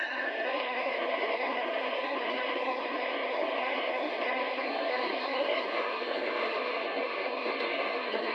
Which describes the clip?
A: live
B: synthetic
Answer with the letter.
B